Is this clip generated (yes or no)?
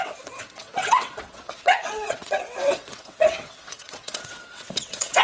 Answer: yes